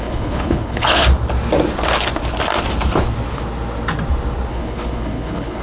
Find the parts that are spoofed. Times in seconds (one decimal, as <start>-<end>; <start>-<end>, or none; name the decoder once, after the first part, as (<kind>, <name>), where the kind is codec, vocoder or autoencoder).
0.0-1.1 (codec, HILCodec); 4.5-5.6